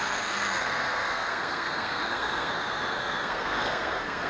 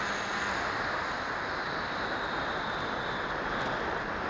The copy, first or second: first